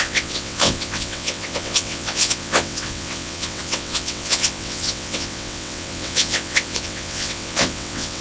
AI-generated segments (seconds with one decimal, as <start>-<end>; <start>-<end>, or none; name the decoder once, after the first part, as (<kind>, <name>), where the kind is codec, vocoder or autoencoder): 0.0-8.2 (vocoder, WaveNeXt)